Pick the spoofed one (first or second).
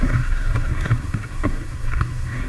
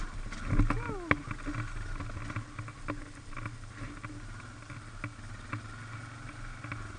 first